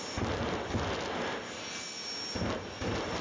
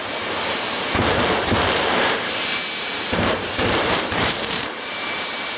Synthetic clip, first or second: second